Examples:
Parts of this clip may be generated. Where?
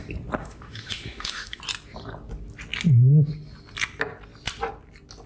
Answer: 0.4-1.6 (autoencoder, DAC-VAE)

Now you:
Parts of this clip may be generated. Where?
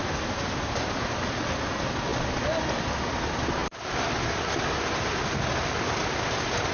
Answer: none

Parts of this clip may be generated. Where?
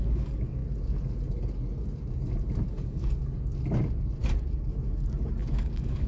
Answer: 0.0-0.6 (codec, DAC); 2.7-3.2; 5.5-6.1